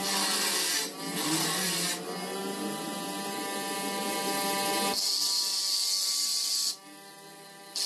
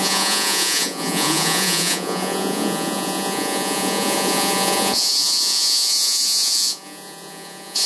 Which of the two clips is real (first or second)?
first